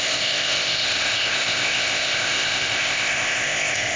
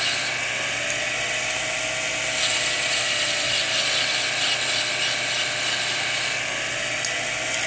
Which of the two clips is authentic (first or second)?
second